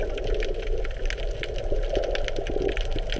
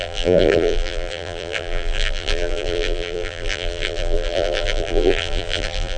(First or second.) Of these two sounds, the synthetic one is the second